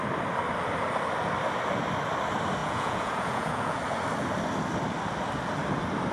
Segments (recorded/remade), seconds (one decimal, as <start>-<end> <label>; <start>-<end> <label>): 0.0-2.6 recorded; 2.6-3.8 remade; 3.8-6.1 recorded